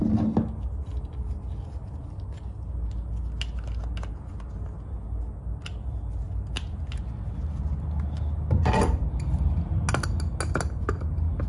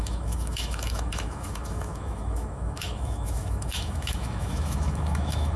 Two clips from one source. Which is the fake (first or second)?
second